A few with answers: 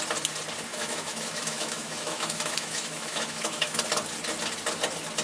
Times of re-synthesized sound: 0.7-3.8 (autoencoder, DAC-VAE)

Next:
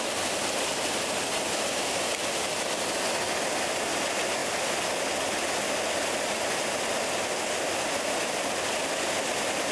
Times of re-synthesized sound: none